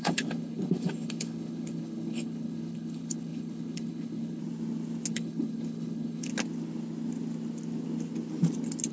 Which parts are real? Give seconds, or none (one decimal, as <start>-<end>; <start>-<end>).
4.4-5.1; 6.3-8.9